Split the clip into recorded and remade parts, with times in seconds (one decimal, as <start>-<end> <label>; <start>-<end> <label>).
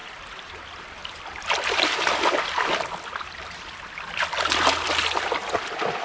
0.0-0.6 remade; 0.6-6.0 recorded